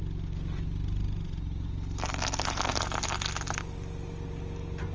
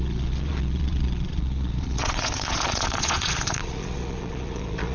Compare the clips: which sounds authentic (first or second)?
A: first